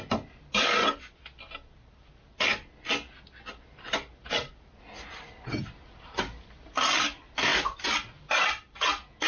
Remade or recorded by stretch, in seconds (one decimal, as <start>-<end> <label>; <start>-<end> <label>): 0.0-9.3 recorded